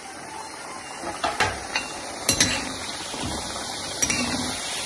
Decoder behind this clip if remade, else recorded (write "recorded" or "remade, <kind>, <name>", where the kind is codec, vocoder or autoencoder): remade, vocoder, BigVGAN v2